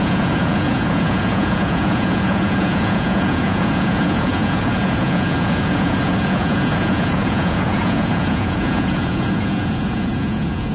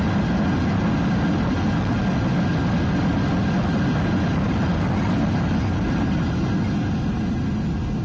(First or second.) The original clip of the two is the second